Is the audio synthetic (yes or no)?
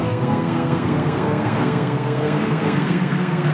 yes